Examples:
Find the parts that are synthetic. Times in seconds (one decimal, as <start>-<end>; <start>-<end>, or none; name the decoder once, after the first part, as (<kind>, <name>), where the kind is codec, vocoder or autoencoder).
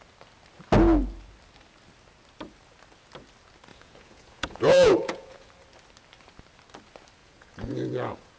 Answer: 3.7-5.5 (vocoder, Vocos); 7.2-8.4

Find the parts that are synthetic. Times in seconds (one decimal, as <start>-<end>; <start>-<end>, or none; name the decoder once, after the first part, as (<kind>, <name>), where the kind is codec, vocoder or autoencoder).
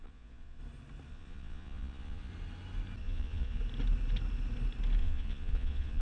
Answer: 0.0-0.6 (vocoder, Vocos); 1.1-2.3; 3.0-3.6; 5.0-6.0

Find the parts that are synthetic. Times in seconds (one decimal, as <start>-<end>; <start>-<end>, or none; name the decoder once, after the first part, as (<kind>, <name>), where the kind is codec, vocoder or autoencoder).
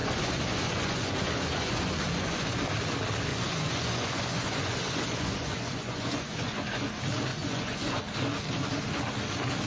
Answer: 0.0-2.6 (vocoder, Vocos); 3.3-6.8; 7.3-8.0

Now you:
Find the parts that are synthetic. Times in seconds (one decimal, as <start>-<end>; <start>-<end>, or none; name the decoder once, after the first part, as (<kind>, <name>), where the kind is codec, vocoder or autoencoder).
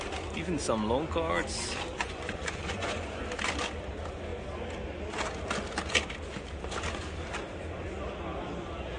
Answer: 1.9-3.2 (vocoder, Vocos)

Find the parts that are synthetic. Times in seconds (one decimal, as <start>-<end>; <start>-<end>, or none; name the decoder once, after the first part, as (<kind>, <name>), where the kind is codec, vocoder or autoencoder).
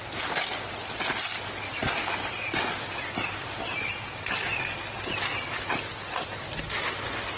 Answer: none